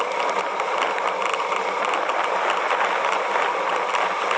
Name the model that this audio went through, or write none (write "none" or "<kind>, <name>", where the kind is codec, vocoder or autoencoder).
none